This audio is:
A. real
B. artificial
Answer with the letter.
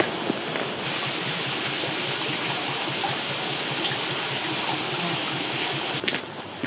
A